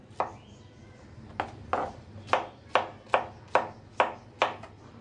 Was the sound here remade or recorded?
recorded